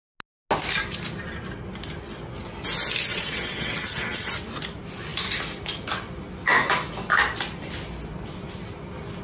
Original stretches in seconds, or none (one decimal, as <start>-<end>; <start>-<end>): 0.0-3.1; 4.3-9.2